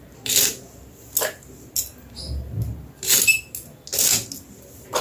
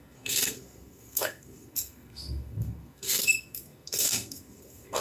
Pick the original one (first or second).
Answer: first